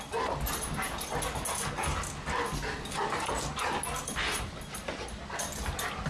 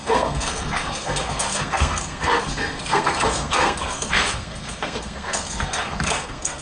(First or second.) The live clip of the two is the first